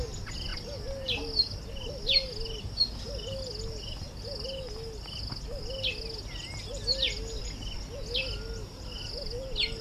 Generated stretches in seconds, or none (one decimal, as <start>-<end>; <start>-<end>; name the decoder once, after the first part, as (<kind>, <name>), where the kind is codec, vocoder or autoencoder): none